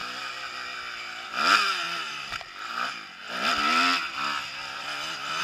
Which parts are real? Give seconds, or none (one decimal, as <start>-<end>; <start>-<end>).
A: 0.0-5.4

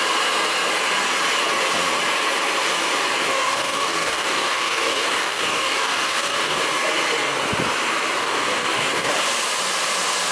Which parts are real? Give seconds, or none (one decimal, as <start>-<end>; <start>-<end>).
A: 0.0-3.3; 6.6-8.2; 9.1-10.3

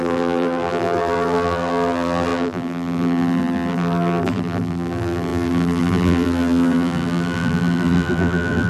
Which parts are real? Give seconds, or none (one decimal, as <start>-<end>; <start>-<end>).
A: none

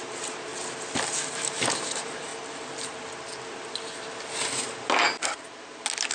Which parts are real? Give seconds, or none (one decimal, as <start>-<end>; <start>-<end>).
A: 0.5-1.3; 2.3-6.1

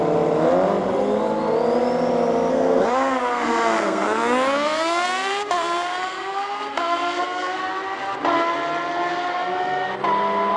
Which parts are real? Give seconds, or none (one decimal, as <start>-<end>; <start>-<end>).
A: 0.0-2.5; 7.6-9.3; 9.9-10.6